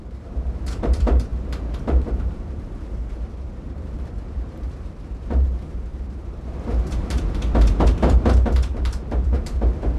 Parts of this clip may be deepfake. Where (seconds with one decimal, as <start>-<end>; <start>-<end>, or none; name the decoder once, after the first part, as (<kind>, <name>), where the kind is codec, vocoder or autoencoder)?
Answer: 0.0-10.0 (vocoder, BigVGAN v2)